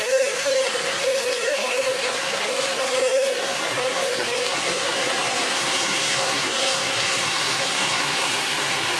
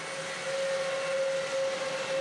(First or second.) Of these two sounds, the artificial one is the first